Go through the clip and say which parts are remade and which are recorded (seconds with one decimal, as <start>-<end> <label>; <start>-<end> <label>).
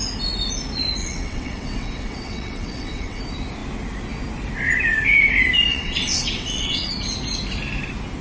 0.0-1.0 recorded; 1.0-3.2 remade; 3.2-5.7 recorded; 5.7-6.9 remade; 6.9-8.2 recorded